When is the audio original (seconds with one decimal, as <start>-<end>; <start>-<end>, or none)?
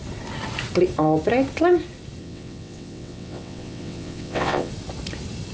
0.0-2.2; 4.7-5.5